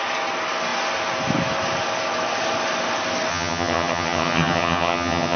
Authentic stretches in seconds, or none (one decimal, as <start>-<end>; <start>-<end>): 0.0-3.3